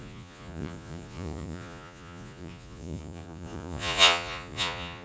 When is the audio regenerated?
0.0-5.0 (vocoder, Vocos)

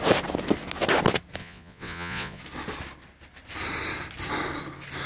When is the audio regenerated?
1.4-2.4 (vocoder, Vocos)

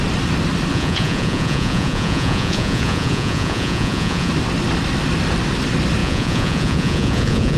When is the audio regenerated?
0.7-4.3 (vocoder, Vocos); 6.0-7.6

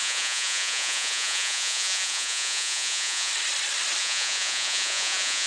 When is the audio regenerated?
0.0-3.3 (vocoder, Vocos); 4.0-5.5

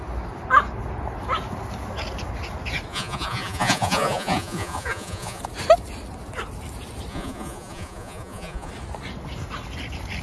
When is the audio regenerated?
2.9-5.4 (vocoder, Vocos); 7.1-8.7

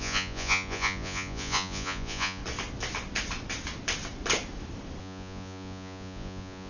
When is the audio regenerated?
0.0-2.4 (vocoder, Vocos); 5.0-6.7

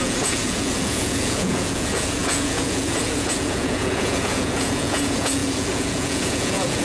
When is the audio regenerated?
0.0-6.8 (vocoder, Vocos)